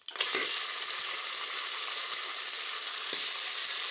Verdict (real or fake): real